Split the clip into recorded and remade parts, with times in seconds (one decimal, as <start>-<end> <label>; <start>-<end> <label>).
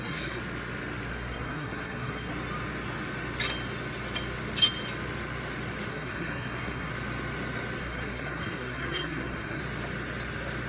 0.0-0.4 remade; 0.4-1.1 recorded; 1.1-2.3 remade; 2.3-5.9 recorded; 5.9-6.9 remade; 6.9-7.8 recorded; 7.8-9.6 remade; 9.6-10.7 recorded